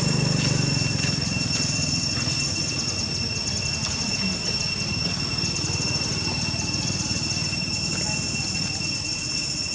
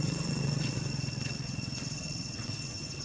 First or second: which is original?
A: first